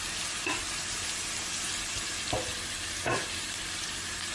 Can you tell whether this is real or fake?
real